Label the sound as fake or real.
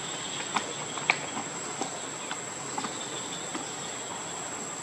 real